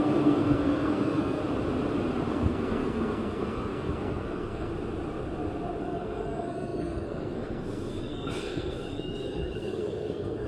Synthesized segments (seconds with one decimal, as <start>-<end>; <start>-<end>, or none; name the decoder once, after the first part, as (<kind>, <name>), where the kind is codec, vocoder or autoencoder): 0.0-1.4 (codec, SNAC); 2.3-4.7; 5.8-10.5